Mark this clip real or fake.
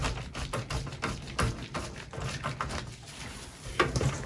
real